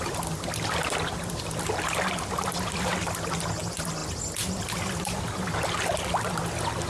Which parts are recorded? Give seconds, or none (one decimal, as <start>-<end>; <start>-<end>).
0.0-6.9